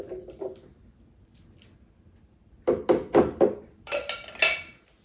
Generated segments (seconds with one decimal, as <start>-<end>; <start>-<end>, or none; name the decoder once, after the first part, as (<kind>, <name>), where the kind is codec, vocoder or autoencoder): none